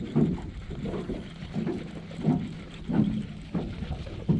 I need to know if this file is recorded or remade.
recorded